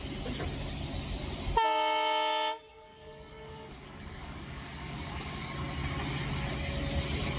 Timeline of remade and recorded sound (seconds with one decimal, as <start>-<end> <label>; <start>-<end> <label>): 0.0-2.7 recorded; 2.7-5.5 remade; 5.5-7.4 recorded